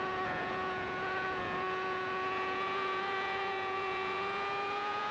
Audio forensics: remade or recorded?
remade